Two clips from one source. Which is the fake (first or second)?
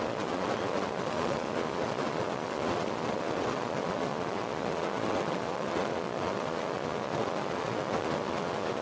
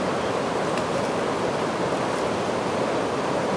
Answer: first